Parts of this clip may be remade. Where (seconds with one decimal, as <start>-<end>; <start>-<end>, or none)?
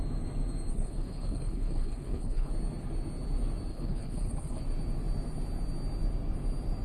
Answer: 0.7-2.5; 3.7-4.6